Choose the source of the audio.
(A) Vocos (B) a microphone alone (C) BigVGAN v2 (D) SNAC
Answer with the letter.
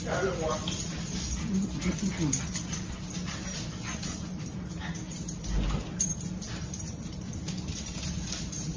B